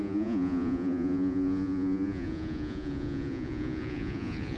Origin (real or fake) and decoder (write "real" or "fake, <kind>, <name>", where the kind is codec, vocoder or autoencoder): fake, vocoder, Vocos